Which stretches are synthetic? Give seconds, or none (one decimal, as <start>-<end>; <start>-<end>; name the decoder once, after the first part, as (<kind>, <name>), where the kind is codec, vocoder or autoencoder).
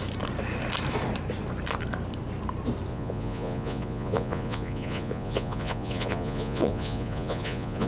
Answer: 2.9-7.9 (vocoder, Vocos)